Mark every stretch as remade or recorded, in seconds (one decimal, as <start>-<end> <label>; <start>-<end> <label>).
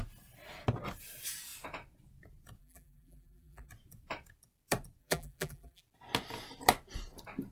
0.0-2.6 recorded; 2.6-3.7 remade; 3.7-5.0 recorded; 5.0-5.8 remade; 5.8-7.5 recorded